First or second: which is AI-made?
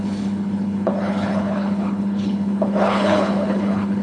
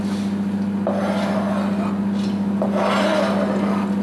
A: first